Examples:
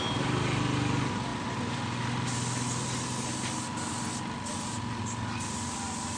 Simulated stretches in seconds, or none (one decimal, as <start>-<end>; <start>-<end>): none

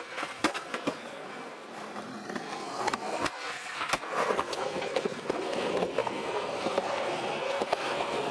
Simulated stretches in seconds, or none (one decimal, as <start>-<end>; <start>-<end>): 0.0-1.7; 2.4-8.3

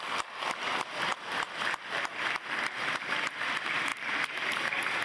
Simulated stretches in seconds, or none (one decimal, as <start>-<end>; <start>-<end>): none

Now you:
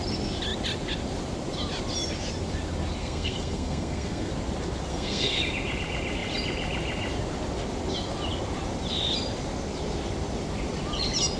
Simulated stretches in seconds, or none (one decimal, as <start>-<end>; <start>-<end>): 3.0-4.3; 4.9-5.4

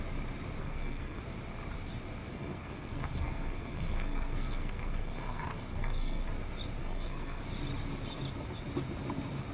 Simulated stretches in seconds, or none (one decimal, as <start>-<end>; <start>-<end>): 0.6-1.2; 2.3-6.2; 6.8-7.4